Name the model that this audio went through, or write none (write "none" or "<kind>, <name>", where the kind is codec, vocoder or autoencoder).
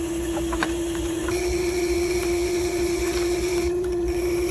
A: vocoder, Vocos